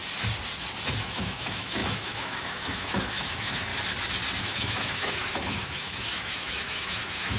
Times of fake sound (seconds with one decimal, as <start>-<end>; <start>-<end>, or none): 1.0-3.7; 4.4-7.4